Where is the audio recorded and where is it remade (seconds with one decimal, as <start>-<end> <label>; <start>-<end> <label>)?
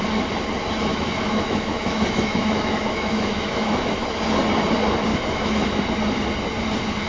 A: 0.0-0.9 recorded; 0.9-4.0 remade; 4.0-5.1 recorded; 5.1-5.8 remade; 5.8-7.1 recorded